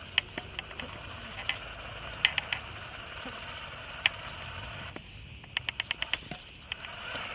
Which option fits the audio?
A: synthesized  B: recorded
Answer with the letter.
B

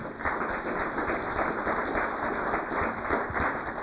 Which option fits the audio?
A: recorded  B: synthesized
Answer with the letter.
A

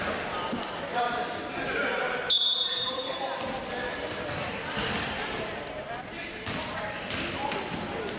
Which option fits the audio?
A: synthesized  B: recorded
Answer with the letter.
A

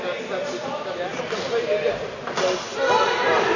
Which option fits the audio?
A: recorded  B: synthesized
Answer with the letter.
A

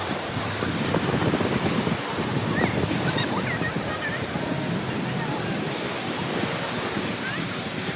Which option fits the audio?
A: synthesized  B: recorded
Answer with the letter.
A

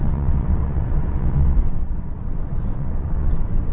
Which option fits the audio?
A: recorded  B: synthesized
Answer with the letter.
B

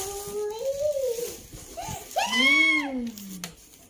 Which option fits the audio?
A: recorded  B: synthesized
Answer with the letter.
A